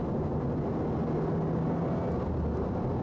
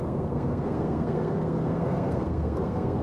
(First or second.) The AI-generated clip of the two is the second